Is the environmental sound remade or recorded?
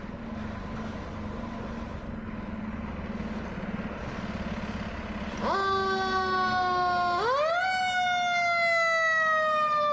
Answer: recorded